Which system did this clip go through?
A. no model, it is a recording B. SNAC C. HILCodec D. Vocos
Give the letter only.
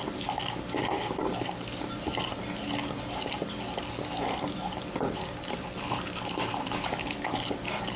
A